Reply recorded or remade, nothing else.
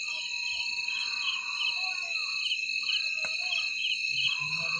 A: recorded